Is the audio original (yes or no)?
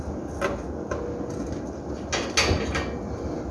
yes